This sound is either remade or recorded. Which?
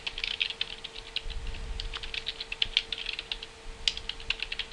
recorded